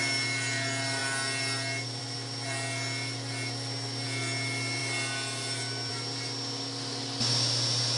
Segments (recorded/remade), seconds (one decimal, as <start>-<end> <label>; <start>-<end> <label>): 0.0-8.0 recorded